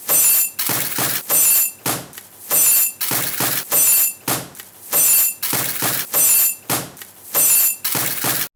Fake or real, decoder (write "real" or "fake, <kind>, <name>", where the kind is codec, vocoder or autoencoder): real